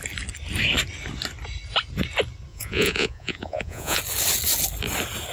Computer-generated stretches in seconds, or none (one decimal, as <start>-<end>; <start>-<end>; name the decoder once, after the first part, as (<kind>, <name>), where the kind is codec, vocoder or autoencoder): 2.5-4.0 (vocoder, Vocos)